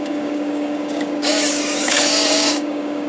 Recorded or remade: remade